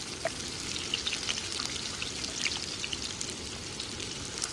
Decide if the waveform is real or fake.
real